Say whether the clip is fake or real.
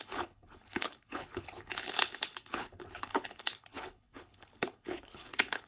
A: fake